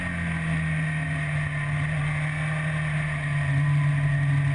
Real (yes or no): yes